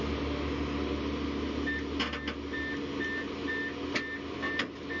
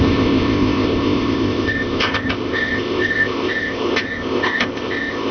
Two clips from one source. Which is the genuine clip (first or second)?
first